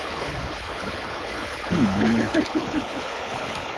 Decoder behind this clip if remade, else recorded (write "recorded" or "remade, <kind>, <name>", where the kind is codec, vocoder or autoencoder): remade, codec, HILCodec